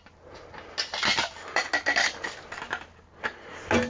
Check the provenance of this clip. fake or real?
real